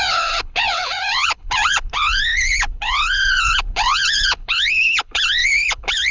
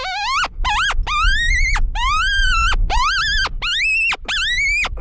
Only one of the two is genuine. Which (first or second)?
second